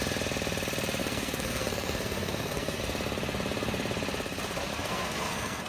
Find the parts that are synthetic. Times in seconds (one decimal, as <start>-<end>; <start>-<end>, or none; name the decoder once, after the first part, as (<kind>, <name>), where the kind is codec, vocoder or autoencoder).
1.0-2.8 (codec, SNAC); 4.7-5.7